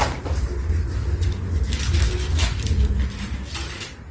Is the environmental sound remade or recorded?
recorded